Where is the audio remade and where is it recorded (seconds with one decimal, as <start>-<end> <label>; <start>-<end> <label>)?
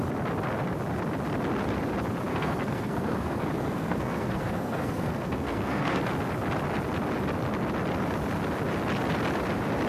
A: 0.0-2.3 recorded; 2.3-6.0 remade; 6.0-9.9 recorded